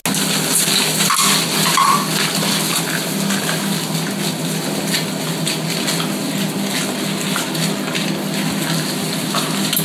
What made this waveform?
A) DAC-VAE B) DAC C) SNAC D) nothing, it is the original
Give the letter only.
D